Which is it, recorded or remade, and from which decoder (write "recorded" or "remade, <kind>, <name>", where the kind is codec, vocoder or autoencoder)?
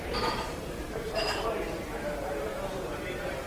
remade, vocoder, BigVGAN v2